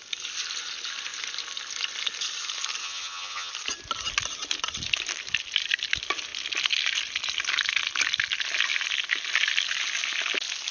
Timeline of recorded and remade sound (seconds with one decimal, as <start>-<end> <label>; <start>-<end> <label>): 0.0-2.8 recorded; 2.8-3.5 remade; 3.5-10.7 recorded